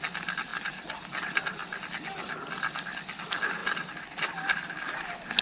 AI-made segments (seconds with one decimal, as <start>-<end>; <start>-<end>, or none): none